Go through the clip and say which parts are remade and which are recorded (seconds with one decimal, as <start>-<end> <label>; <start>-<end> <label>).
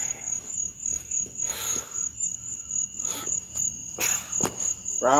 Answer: 0.0-3.5 remade; 3.5-5.2 recorded